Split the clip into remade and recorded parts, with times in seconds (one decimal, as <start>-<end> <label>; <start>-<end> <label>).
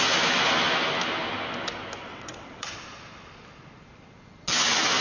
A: 0.0-2.1 recorded; 2.1-2.8 remade; 2.8-5.0 recorded